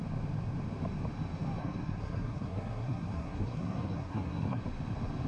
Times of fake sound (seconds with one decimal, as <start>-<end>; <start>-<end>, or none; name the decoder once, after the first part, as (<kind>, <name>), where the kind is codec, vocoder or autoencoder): 1.6-4.6 (codec, SNAC)